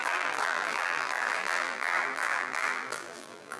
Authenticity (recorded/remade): remade